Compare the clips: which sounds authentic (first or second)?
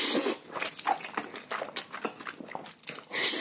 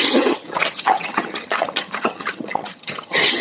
first